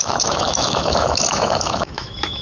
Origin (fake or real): fake